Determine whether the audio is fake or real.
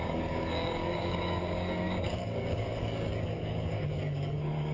fake